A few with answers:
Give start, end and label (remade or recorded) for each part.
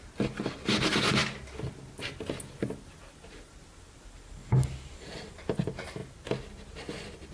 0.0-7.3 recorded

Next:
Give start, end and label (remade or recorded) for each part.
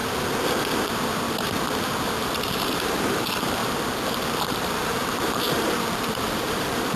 0.0-2.2 recorded; 2.2-3.6 remade; 3.6-4.5 recorded; 4.5-7.0 remade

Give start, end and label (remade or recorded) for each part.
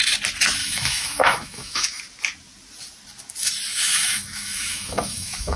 0.0-0.6 recorded; 0.6-2.0 remade; 2.0-3.7 recorded; 3.7-5.6 remade